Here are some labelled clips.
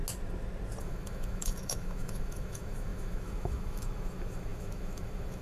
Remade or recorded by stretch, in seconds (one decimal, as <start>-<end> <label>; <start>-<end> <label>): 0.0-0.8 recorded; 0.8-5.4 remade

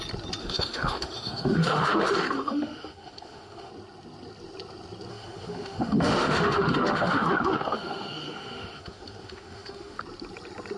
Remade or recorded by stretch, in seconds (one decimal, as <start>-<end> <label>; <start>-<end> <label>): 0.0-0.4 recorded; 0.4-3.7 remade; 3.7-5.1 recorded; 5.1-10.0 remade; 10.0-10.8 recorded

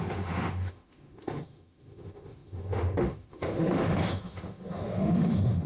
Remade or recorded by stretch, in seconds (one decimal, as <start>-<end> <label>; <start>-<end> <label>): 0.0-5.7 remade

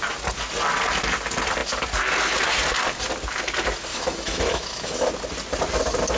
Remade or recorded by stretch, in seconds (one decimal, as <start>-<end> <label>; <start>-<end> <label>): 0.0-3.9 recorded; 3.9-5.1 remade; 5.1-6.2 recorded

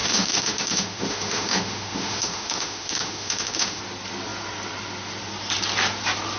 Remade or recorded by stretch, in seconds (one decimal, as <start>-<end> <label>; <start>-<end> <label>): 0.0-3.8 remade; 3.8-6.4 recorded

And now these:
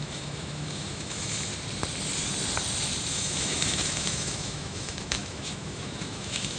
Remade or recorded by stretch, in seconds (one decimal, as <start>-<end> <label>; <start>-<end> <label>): 0.0-1.5 remade; 1.5-3.1 recorded; 3.1-6.6 remade